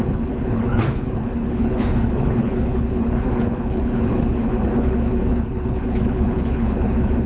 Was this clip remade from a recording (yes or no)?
yes